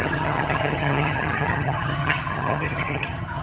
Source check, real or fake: fake